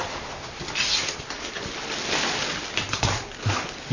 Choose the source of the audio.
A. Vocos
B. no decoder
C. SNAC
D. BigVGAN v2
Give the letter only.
B